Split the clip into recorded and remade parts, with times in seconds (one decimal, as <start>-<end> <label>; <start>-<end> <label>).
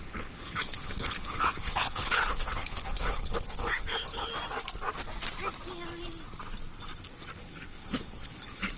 0.0-4.3 remade; 4.3-7.4 recorded; 7.4-8.8 remade